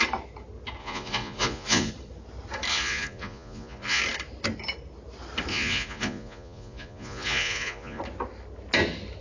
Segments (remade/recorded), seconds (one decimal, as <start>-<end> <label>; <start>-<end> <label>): 0.0-0.8 recorded; 0.8-1.9 remade; 1.9-2.7 recorded; 2.7-4.0 remade; 4.0-5.5 recorded; 5.5-8.0 remade; 8.0-9.2 recorded